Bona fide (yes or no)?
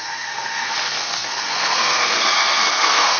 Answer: no